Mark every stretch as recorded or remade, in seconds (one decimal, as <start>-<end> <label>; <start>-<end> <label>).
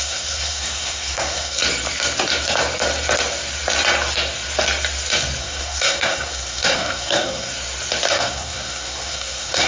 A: 0.0-1.6 remade; 1.6-5.4 recorded; 5.4-7.5 remade; 7.5-8.1 recorded; 8.1-9.7 remade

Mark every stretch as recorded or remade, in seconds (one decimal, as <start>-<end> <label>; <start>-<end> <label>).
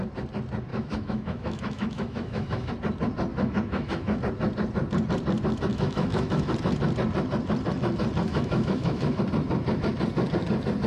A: 0.0-0.7 recorded; 0.7-2.7 remade; 2.7-3.3 recorded; 3.3-4.2 remade; 4.2-5.7 recorded; 5.7-6.5 remade; 6.5-8.3 recorded; 8.3-9.2 remade; 9.2-10.9 recorded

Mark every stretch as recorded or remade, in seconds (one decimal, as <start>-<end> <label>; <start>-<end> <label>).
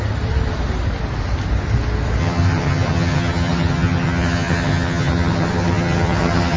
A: 0.0-2.2 recorded; 2.2-6.6 remade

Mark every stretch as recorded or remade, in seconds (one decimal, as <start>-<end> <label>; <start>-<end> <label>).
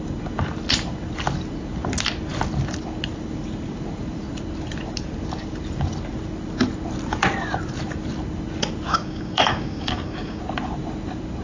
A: 0.0-8.9 recorded; 8.9-10.4 remade; 10.4-11.4 recorded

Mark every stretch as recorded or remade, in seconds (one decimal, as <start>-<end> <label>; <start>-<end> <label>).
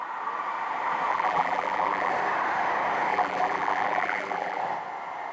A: 0.0-1.1 recorded; 1.1-2.1 remade; 2.1-3.1 recorded; 3.1-4.6 remade; 4.6-5.3 recorded